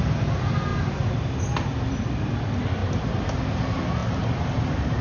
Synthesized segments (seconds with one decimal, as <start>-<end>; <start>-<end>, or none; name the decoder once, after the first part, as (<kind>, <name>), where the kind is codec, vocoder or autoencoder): 2.8-3.4 (vocoder, BigVGAN v2)